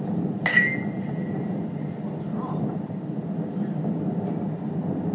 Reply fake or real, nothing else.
real